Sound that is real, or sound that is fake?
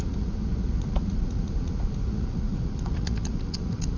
fake